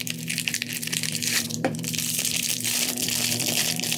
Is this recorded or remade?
remade